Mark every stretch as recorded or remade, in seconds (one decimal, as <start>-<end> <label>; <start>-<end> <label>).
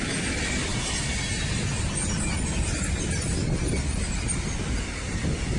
0.0-5.6 recorded